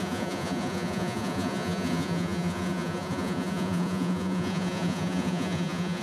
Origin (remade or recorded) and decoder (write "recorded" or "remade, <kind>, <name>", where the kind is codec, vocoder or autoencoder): remade, vocoder, Vocos